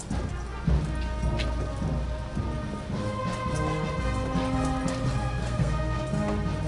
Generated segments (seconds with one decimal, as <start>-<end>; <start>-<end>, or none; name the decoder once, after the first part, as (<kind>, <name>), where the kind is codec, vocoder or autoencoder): 5.4-6.0 (codec, SNAC)